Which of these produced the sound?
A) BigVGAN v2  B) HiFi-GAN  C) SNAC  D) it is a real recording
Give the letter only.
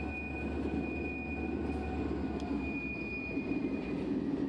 D